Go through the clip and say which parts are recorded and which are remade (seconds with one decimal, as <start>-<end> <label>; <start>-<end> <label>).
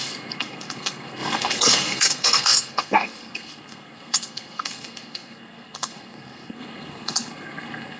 0.0-8.0 remade